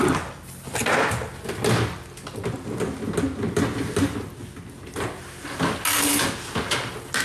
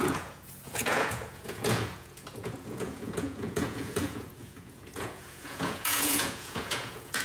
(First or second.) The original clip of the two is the first